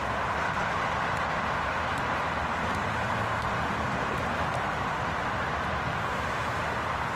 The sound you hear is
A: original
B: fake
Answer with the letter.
A